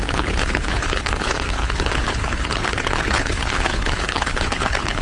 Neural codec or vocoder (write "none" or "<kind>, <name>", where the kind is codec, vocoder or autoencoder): codec, HILCodec